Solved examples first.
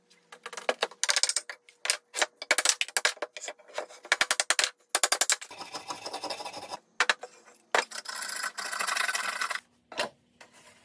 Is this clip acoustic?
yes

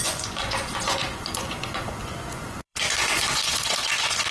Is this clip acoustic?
no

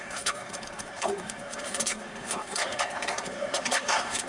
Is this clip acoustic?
no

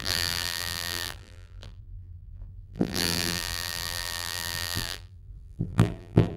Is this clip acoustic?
no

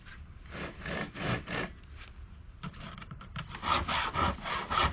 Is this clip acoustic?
yes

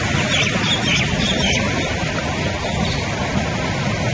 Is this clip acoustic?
yes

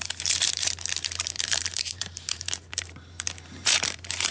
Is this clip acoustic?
no